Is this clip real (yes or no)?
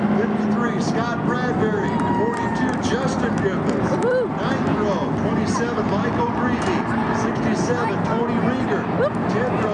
yes